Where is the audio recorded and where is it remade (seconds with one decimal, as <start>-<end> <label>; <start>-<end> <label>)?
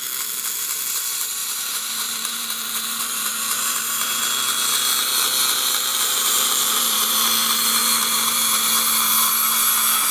0.0-1.4 recorded; 1.4-4.2 remade; 4.2-5.9 recorded; 5.9-7.2 remade; 7.2-7.8 recorded; 7.8-8.7 remade; 8.7-10.1 recorded